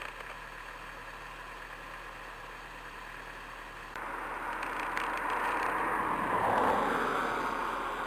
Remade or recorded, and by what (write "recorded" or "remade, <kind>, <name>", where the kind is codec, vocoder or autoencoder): recorded